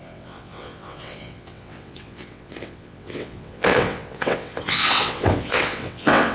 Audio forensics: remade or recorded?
remade